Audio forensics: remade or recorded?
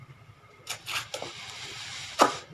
remade